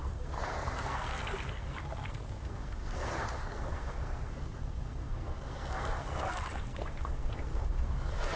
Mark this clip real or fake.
fake